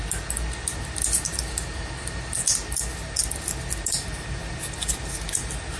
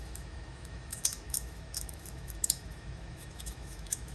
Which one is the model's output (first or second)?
second